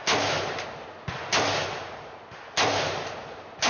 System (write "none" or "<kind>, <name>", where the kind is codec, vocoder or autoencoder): none